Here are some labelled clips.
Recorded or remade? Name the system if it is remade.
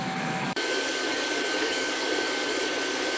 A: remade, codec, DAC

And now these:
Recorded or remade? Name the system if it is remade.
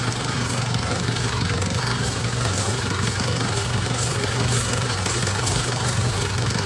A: remade, codec, SNAC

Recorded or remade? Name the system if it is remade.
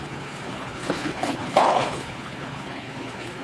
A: remade, codec, HILCodec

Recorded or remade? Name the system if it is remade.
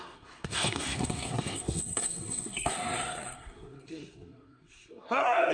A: remade, codec, SNAC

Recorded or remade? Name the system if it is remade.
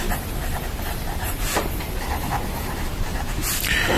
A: recorded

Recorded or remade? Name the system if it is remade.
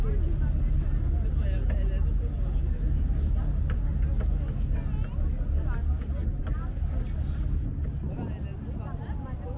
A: recorded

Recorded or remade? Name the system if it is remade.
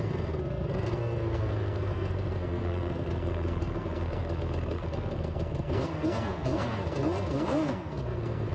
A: remade, codec, SNAC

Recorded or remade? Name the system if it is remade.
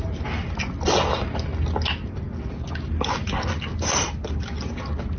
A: recorded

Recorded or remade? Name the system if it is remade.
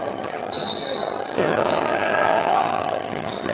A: remade, vocoder, HiFi-GAN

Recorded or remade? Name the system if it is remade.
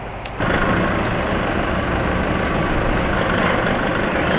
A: recorded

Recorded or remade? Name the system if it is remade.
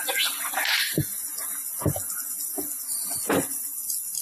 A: recorded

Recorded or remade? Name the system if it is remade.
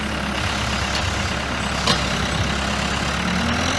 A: recorded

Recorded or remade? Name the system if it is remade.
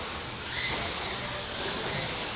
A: recorded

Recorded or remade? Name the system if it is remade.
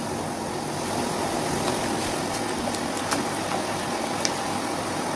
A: recorded